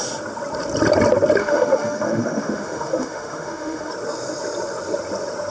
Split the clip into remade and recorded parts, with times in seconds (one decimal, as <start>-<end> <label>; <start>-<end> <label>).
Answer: 0.0-1.4 recorded; 1.4-3.9 remade; 3.9-5.5 recorded